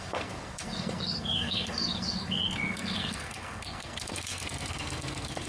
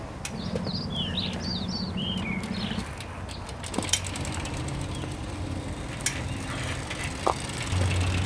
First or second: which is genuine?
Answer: second